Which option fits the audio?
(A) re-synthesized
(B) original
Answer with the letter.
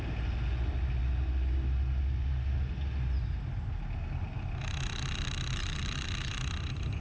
B